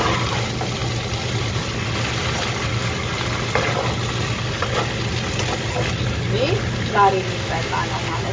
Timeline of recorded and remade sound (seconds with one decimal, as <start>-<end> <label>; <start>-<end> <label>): 0.0-8.3 recorded